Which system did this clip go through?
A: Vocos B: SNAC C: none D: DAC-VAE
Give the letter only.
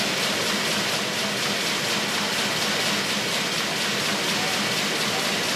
C